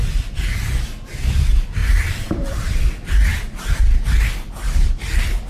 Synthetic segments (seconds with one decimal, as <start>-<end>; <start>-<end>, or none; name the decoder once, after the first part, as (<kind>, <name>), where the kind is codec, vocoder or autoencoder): 1.8-2.7 (vocoder, BigVGAN v2); 3.3-3.8

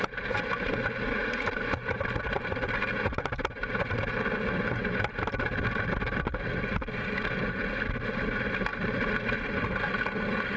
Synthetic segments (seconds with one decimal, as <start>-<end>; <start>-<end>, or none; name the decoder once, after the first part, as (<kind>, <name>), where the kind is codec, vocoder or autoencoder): none

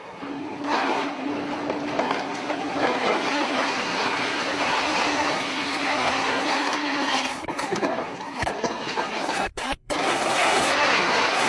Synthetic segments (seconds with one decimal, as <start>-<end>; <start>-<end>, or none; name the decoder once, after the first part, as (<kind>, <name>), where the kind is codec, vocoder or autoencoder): 0.0-1.3 (codec, SNAC); 2.0-11.5